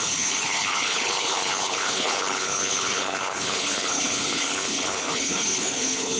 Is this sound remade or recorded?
remade